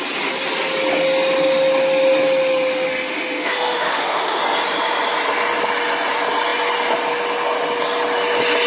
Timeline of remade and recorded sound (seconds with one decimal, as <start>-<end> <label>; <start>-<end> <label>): 0.0-2.9 recorded; 2.9-4.4 remade; 4.4-8.7 recorded